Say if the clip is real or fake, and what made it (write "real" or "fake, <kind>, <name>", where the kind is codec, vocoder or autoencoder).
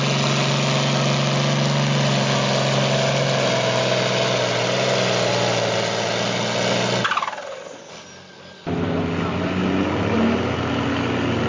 real